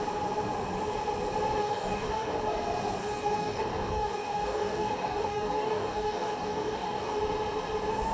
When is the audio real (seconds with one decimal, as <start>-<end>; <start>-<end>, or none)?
0.0-1.6; 2.4-3.0; 7.2-8.1